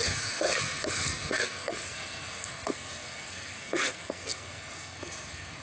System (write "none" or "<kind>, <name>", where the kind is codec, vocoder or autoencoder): codec, SNAC